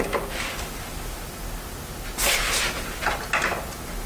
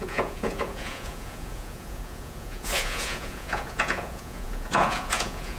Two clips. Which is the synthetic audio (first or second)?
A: second